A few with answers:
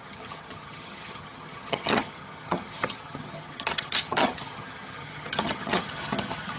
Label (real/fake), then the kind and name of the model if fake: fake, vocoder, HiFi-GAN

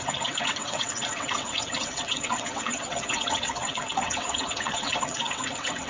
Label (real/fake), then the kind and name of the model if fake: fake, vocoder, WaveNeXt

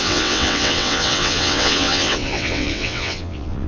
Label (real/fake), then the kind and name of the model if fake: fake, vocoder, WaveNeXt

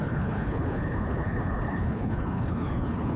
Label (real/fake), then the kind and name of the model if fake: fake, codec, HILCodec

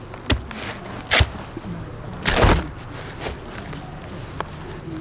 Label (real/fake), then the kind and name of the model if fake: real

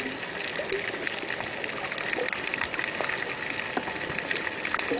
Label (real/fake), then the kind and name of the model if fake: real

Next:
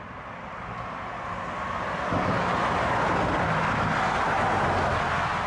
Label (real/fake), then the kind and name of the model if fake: real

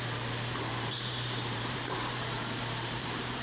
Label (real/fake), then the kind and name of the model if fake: fake, vocoder, BigVGAN v2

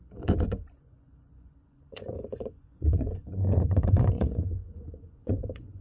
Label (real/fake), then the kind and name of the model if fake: fake, vocoder, Vocos